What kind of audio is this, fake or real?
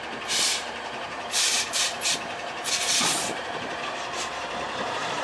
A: fake